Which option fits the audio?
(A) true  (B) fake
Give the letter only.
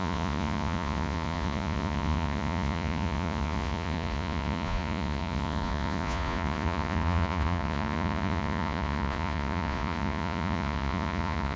B